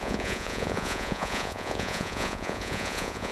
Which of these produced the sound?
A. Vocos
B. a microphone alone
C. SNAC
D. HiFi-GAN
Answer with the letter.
A